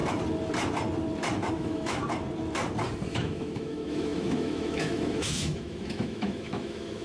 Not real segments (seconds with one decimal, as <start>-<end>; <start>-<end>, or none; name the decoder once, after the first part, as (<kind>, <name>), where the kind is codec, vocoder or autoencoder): 1.5-2.0 (autoencoder, DAC-VAE); 3.1-7.0